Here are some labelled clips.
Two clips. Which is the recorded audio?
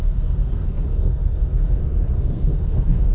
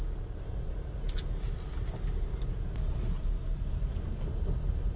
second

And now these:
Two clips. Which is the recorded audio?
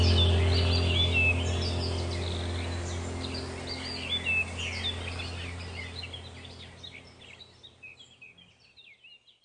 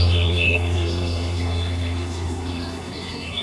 first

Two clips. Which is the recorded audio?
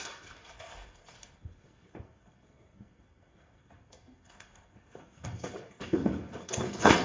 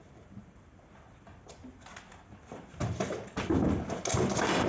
second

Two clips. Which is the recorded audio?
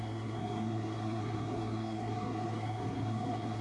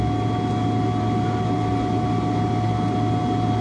second